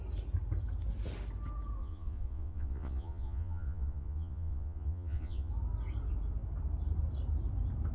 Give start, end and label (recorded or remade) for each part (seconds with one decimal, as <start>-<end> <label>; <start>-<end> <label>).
0.0-1.8 recorded; 1.8-5.5 remade; 5.5-7.9 recorded